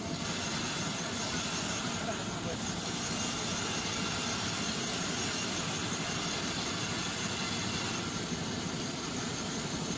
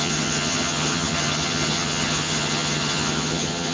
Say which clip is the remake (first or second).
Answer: second